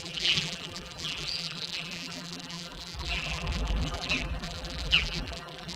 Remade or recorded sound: remade